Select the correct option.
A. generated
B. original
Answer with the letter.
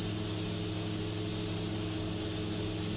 B